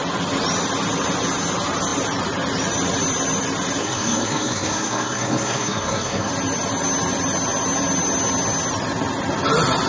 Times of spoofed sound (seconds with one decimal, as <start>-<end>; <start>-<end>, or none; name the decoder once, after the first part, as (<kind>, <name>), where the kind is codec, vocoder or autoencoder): 3.8-6.3 (codec, SNAC)